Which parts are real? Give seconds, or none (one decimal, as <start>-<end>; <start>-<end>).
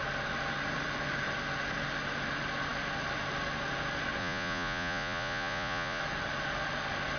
0.0-4.2; 6.0-7.2